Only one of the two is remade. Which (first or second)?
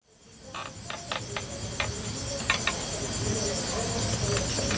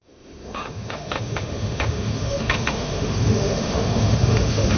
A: second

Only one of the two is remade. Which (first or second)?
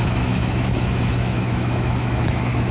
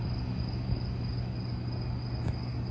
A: first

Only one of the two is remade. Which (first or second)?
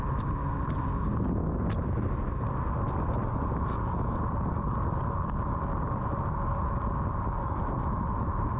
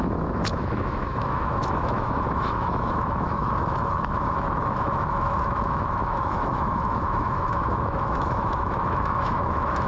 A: second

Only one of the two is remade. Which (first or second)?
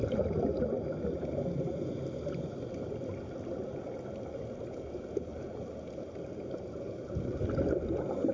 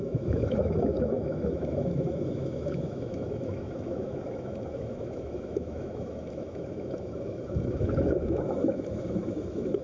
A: second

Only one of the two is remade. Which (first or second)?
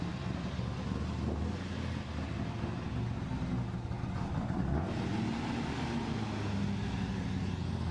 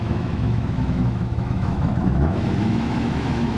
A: second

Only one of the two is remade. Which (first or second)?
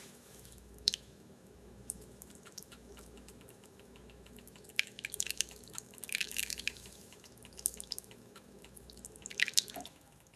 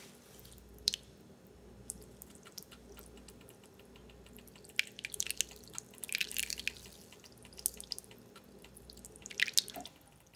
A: first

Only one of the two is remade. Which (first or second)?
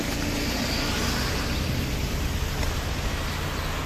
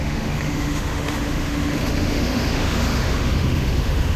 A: second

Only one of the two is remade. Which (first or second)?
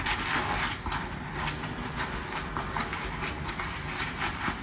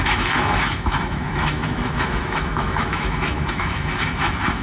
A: second